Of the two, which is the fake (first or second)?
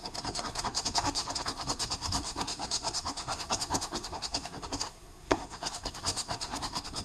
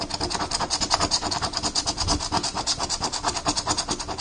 first